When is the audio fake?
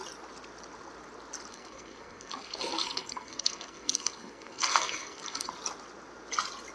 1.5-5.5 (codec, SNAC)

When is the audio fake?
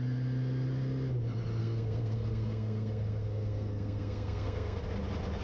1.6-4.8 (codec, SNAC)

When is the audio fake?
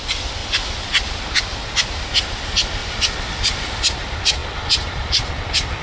2.8-3.8 (vocoder, BigVGAN v2); 4.4-5.3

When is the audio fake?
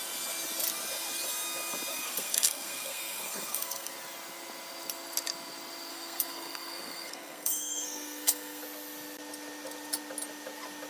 1.9-3.9 (codec, SNAC); 5.9-8.6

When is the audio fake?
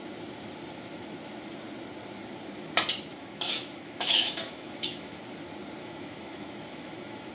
3.1-5.2 (autoencoder, DAC-VAE); 5.8-7.3